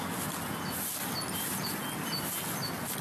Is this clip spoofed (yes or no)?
no